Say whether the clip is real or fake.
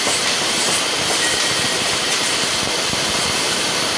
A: fake